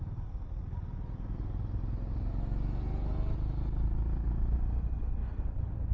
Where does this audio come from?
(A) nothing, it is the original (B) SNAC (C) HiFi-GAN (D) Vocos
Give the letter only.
A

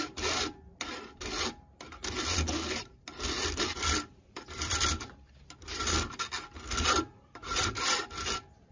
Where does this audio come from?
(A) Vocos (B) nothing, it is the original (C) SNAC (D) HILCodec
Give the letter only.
B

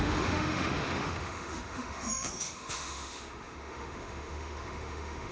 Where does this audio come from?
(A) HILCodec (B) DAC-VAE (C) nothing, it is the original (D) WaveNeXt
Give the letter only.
B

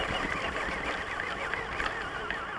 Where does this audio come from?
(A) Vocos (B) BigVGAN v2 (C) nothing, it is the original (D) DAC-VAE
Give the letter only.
C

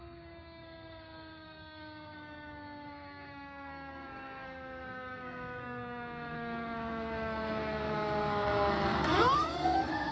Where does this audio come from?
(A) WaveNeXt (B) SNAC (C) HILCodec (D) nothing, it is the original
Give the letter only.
B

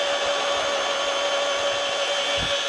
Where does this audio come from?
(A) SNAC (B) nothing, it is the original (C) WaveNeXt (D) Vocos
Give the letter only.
B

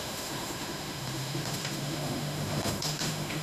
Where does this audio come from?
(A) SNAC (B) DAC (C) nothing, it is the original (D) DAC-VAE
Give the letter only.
D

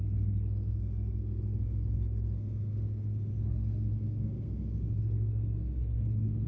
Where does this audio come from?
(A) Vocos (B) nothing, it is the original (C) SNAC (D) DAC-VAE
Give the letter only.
C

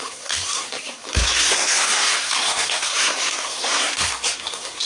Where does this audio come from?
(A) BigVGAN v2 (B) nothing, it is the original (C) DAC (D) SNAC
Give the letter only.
D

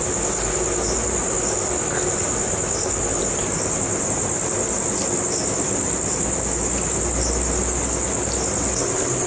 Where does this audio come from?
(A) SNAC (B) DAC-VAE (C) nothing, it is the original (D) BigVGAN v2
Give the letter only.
C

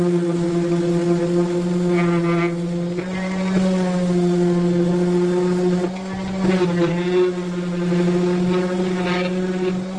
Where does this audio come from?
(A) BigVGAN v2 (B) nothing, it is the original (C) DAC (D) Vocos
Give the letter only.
B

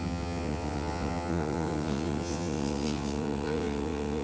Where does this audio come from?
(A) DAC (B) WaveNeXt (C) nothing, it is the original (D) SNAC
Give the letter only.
B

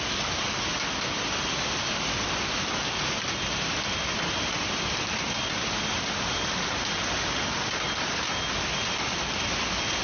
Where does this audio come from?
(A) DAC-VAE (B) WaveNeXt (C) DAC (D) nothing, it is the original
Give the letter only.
D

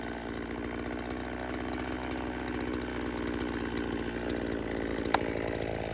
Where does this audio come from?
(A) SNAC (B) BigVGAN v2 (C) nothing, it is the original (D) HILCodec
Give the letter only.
C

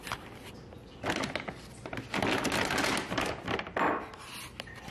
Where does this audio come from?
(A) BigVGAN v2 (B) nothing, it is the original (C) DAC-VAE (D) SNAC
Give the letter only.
B